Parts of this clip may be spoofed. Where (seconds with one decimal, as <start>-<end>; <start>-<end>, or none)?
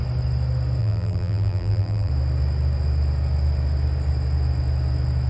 0.8-2.1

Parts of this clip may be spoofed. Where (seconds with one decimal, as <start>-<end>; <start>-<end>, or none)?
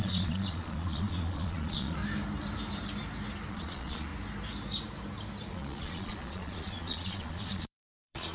0.0-2.0; 3.5-4.1; 5.5-8.3